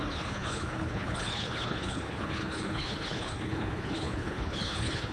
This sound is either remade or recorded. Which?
remade